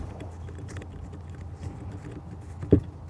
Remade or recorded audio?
recorded